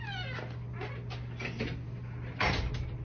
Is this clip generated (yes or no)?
no